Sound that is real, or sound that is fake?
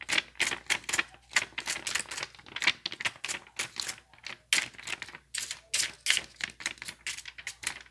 real